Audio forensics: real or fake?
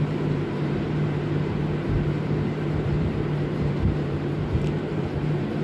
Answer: fake